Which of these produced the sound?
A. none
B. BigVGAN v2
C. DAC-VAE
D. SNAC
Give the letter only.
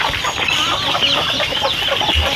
A